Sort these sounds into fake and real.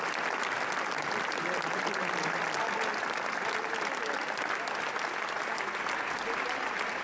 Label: real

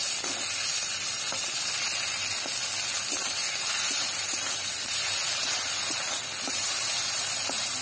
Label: real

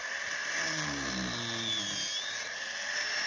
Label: real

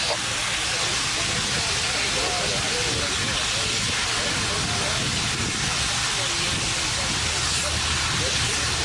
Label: real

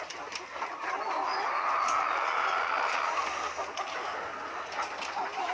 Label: real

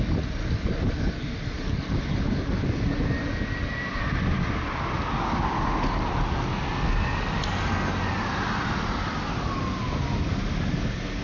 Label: real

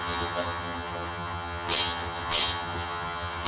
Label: fake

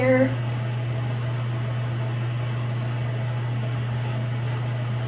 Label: real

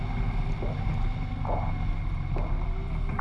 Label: real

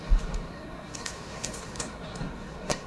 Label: fake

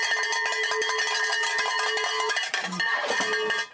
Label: real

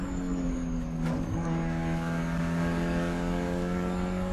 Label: fake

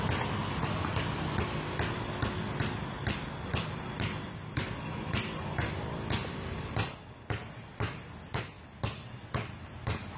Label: real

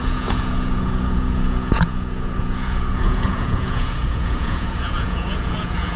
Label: fake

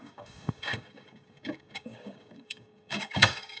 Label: fake